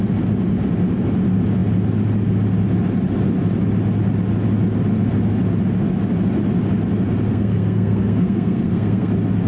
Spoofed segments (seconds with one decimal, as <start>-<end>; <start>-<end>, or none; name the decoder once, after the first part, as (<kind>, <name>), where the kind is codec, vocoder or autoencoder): 7.3-9.1 (codec, SNAC)